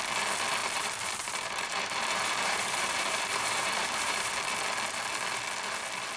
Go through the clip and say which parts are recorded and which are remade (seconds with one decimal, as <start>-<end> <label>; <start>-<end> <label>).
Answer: 0.0-0.6 recorded; 0.6-4.3 remade; 4.3-6.2 recorded